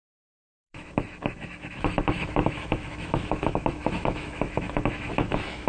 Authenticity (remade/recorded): remade